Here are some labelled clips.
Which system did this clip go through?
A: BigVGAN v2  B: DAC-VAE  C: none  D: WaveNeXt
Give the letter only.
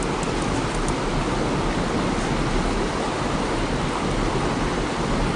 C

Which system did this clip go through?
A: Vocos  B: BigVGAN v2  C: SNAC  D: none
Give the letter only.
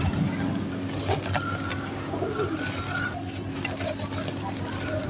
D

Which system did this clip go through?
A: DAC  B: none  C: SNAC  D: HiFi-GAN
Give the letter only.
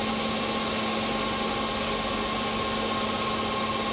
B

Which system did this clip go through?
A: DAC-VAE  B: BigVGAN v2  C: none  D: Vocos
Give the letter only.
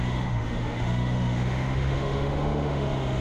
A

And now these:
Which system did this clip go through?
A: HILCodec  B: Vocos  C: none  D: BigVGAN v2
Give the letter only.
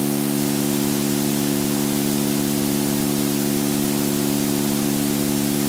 C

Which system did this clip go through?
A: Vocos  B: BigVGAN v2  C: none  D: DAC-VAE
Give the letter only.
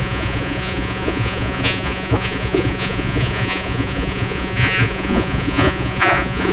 A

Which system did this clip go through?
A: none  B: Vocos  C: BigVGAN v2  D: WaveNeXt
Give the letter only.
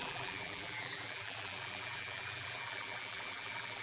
C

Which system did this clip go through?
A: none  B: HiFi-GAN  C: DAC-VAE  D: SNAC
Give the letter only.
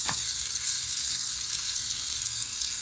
D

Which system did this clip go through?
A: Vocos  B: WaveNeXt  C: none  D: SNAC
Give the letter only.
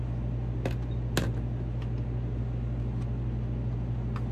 C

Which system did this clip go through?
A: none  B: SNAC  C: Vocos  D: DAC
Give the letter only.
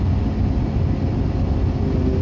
A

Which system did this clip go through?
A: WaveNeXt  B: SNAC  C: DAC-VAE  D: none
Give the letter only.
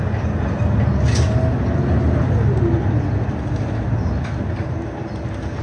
D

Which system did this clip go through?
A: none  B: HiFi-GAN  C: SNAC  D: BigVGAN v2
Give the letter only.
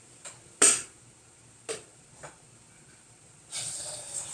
A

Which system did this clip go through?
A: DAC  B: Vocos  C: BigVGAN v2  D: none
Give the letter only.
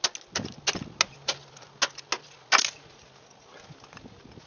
D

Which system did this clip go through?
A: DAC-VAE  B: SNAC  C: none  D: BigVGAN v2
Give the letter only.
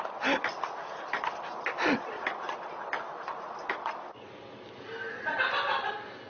C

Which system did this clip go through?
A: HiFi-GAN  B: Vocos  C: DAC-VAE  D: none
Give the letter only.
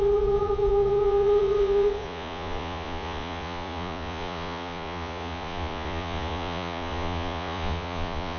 B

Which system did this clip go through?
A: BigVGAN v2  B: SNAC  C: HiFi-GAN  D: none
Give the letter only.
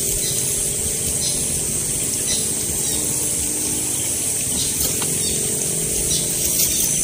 D